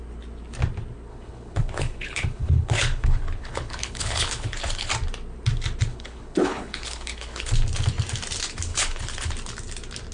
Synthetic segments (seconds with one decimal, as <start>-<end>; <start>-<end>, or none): 1.1-4.9; 5.9-7.5; 8.7-9.3